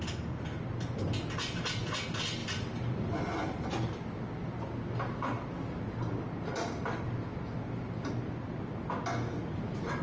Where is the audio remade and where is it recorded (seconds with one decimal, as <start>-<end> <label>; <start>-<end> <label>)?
0.0-2.4 recorded; 2.4-3.4 remade; 3.4-10.0 recorded